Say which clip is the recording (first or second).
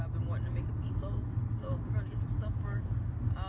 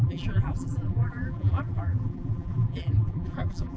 first